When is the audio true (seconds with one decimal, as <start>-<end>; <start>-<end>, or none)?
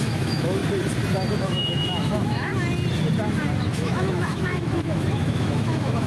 0.6-1.4; 2.5-3.7